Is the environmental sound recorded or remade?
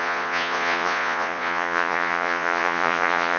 remade